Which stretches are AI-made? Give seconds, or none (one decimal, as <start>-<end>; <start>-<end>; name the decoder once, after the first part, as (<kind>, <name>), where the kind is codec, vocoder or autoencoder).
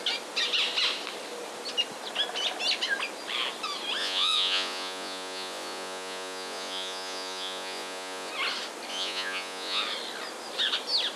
4.0-8.3 (vocoder, Vocos); 8.9-9.8